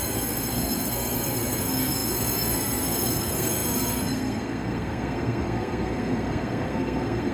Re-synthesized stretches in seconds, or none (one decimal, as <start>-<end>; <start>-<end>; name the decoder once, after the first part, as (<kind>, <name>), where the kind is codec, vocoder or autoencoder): 0.0-7.3 (codec, SNAC)